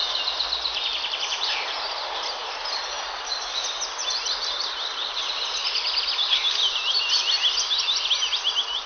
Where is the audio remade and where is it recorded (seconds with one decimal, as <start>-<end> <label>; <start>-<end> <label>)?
0.0-8.9 remade